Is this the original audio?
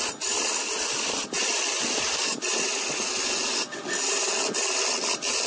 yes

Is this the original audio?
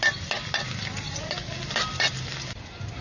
yes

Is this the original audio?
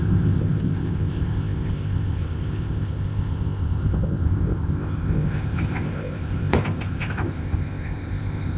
no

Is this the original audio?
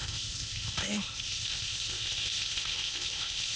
no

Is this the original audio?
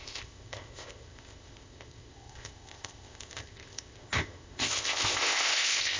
no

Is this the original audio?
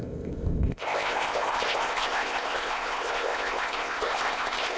no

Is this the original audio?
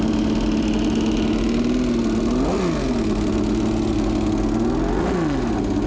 yes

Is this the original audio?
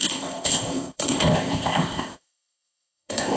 no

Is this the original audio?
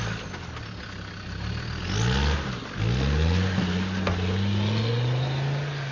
yes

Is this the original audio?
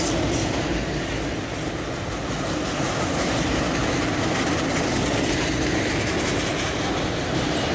yes